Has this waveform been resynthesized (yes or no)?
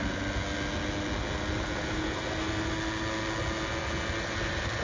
no